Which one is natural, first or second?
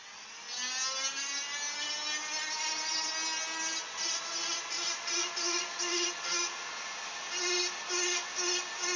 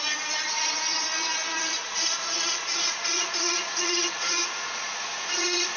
first